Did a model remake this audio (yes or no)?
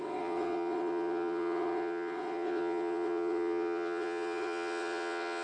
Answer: yes